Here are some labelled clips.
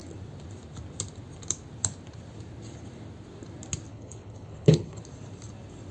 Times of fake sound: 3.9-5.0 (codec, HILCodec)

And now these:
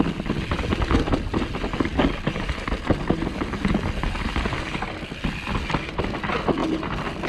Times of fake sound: none

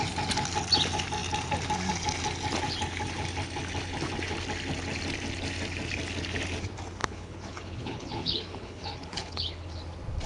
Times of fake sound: 7.0-9.8 (codec, HILCodec)

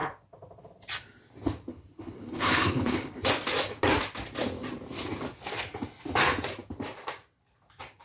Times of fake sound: 1.7-3.2 (codec, HILCodec)

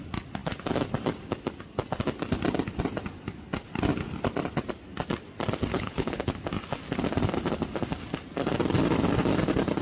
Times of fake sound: 5.7-6.3 (codec, HILCodec)

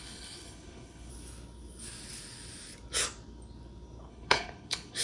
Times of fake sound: 0.0-1.1 (codec, HILCodec); 4.1-5.0

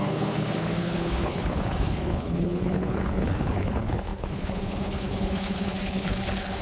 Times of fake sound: 0.0-6.6 (codec, HILCodec)

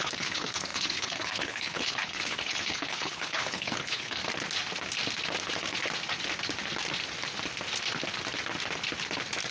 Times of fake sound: 0.0-4.2 (codec, HILCodec)